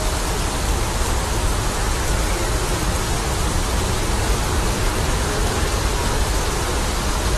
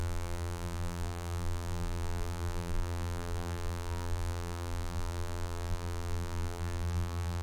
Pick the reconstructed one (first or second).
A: second